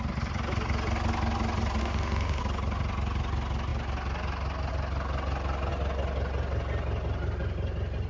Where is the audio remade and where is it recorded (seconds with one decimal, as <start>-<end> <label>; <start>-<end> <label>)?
0.0-1.8 recorded; 1.8-2.4 remade; 2.4-8.1 recorded